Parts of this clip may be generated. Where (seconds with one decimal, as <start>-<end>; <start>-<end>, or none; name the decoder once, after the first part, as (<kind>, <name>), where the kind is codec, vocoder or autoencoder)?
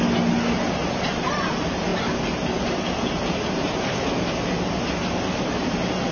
none